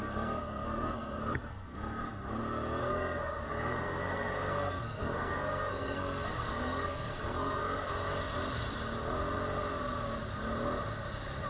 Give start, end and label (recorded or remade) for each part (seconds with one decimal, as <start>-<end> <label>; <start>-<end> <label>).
0.0-2.4 remade; 2.4-2.8 recorded; 2.8-7.9 remade; 7.9-11.5 recorded